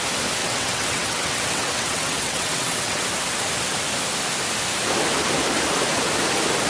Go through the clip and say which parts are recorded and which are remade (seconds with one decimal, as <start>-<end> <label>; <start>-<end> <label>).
0.0-0.4 recorded; 0.4-3.1 remade; 3.1-6.7 recorded